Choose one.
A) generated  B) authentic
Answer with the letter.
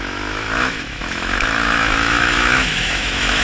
A